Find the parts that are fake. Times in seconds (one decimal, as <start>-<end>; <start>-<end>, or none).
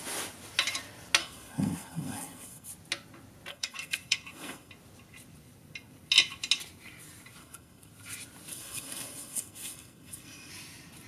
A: 1.2-2.7; 3.5-4.7; 7.4-7.9; 8.5-10.5